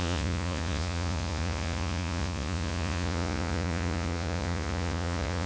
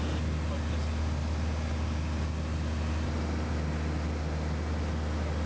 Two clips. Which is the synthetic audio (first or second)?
first